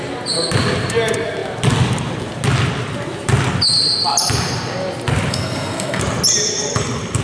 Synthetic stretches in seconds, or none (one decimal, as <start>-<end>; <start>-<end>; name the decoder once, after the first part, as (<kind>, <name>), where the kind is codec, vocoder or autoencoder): 5.3-6.0 (codec, SNAC)